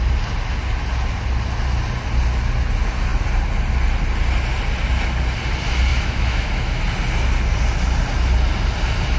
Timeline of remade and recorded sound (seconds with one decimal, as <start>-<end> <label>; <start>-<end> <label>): 0.0-5.9 recorded; 5.9-6.8 remade; 6.8-9.2 recorded